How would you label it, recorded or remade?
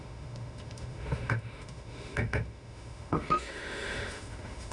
remade